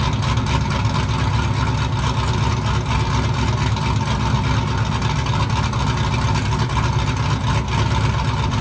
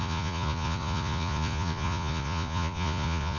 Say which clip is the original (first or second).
first